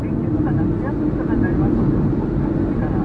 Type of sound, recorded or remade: recorded